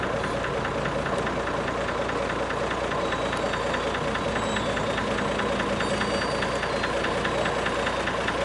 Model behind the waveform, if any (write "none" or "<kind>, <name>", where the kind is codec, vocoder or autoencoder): none